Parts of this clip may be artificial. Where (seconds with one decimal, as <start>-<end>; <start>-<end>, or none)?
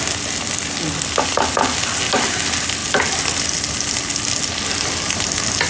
none